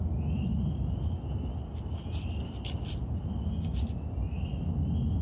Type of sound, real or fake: real